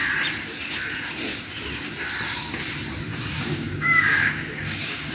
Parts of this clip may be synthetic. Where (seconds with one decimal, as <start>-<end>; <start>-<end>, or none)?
3.3-5.1